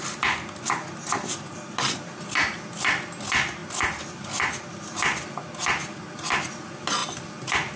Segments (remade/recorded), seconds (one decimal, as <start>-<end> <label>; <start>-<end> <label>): 0.0-7.8 recorded